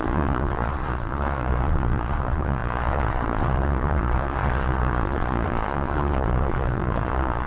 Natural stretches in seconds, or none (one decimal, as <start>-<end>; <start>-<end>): none